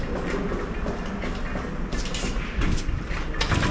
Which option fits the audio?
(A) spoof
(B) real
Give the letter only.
B